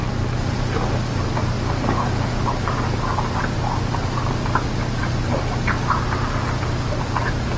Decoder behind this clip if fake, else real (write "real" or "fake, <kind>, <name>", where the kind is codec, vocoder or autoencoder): real